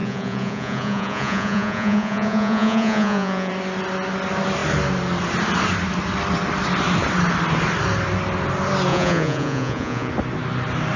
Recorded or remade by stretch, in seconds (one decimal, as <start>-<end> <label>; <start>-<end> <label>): 0.0-3.5 remade; 3.5-8.9 recorded; 8.9-10.1 remade; 10.1-11.0 recorded